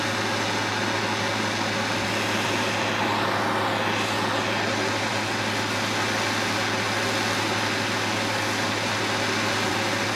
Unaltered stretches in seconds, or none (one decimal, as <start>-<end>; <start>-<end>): 0.0-10.1